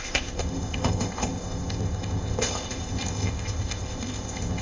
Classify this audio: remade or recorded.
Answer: remade